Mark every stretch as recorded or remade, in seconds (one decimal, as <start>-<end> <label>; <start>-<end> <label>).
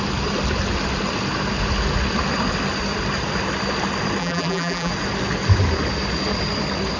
0.0-4.2 recorded; 4.2-4.9 remade; 4.9-7.0 recorded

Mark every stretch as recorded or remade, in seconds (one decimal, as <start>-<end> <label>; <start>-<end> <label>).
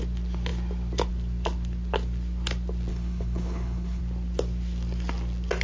0.0-2.9 recorded; 2.9-4.0 remade; 4.0-5.6 recorded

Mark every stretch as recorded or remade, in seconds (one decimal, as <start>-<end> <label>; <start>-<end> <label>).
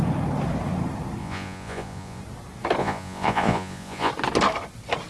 0.0-1.2 recorded; 1.2-2.2 remade; 2.2-2.8 recorded; 2.8-4.1 remade; 4.1-5.1 recorded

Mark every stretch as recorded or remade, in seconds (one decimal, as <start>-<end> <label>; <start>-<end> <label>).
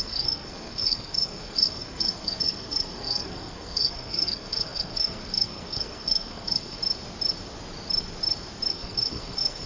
0.0-6.8 remade; 6.8-8.7 recorded; 8.7-9.7 remade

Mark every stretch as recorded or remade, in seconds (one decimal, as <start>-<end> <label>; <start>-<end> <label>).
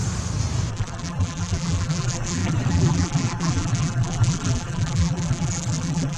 0.0-0.7 recorded; 0.7-6.2 remade